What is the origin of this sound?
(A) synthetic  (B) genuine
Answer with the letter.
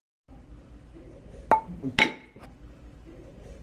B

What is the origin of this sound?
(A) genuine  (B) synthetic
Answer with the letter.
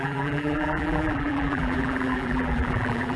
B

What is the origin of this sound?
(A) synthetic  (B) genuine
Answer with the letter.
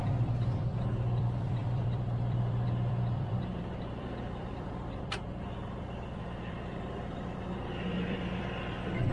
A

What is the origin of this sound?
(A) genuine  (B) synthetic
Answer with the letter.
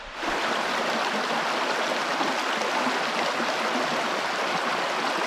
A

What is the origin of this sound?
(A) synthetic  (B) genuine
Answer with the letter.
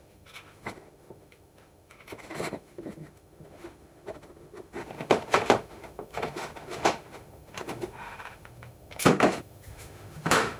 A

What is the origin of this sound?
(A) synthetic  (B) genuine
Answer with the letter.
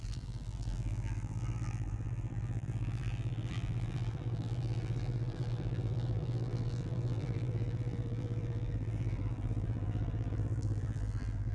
A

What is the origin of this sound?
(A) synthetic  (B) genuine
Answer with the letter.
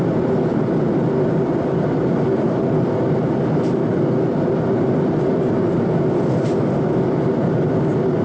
B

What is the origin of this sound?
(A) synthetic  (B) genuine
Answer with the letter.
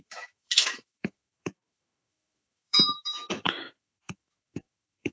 A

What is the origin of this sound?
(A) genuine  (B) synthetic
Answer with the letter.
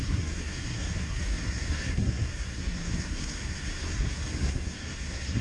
B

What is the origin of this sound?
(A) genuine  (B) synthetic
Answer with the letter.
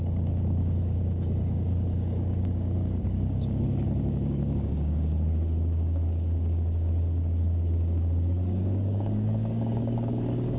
B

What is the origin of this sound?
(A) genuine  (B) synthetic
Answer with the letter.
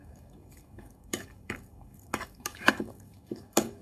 B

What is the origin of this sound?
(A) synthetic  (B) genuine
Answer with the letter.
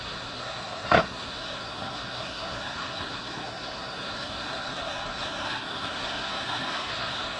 A